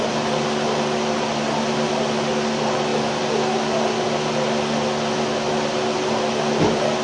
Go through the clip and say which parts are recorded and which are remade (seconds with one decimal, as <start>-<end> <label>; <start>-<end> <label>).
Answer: 0.0-2.9 remade; 2.9-4.0 recorded; 4.0-7.0 remade